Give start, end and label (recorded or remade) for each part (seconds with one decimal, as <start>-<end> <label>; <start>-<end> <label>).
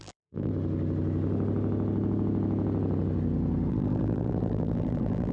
0.0-0.5 remade; 0.5-3.7 recorded; 3.7-5.3 remade